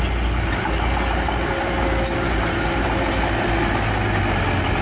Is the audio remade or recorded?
recorded